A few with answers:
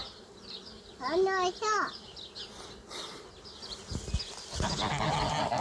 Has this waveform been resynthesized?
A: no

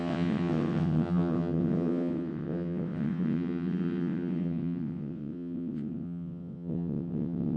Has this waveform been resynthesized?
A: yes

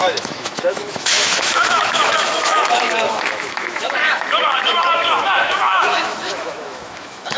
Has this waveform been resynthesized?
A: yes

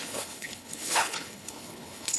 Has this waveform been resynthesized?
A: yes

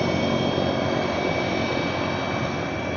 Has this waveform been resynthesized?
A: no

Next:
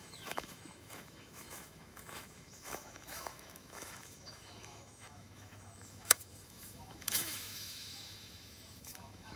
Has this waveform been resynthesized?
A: yes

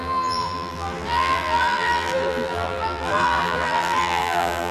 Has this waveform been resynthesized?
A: yes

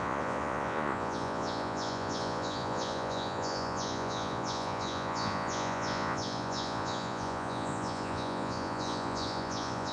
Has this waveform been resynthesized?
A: yes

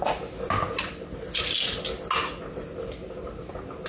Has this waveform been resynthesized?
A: no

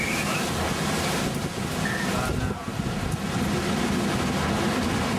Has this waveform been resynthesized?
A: no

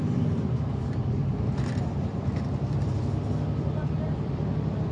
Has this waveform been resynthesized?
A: yes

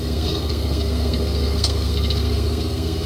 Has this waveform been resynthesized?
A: yes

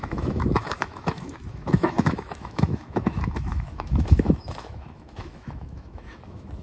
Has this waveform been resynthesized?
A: yes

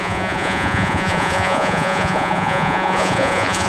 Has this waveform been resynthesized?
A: yes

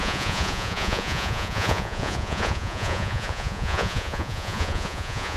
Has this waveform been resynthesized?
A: yes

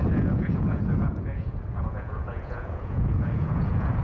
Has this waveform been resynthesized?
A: yes